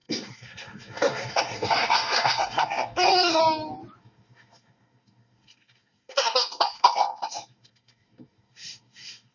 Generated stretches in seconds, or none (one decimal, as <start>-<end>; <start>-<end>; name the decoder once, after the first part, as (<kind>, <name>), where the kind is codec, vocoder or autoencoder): 0.0-3.4 (codec, SNAC); 4.0-9.3